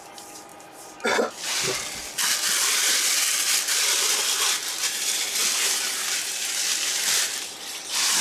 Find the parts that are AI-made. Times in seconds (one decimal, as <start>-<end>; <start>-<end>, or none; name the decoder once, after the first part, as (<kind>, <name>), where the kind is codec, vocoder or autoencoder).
0.5-1.2 (vocoder, BigVGAN v2); 5.4-6.5